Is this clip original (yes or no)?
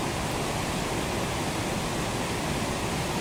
yes